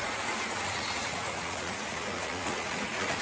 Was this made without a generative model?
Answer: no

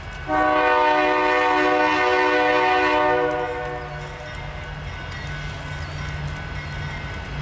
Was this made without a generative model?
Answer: yes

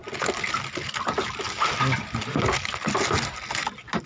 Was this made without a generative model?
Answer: yes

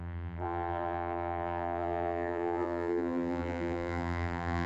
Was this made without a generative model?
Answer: no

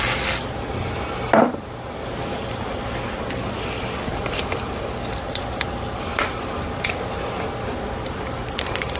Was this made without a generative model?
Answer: yes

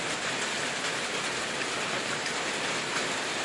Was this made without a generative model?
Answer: yes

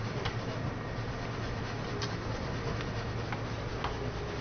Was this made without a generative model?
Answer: yes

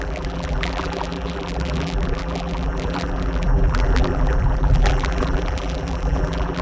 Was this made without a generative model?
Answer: no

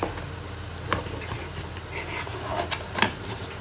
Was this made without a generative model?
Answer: yes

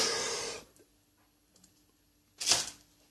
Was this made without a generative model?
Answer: yes